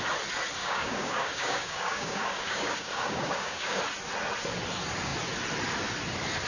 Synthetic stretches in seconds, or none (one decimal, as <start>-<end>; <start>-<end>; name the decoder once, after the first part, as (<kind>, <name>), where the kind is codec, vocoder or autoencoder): 0.6-3.8 (codec, DAC)